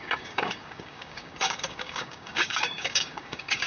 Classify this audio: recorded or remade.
remade